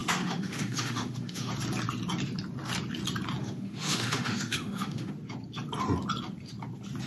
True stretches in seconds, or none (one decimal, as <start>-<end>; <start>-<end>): 1.5-3.4; 5.1-7.1